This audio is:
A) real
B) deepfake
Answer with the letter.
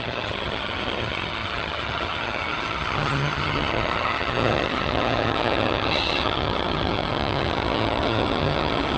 B